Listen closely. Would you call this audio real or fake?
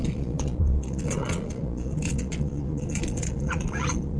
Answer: fake